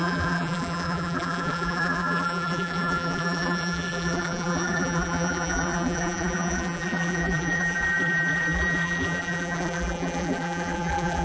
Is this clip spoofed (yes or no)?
yes